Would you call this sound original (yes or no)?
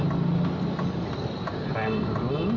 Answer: yes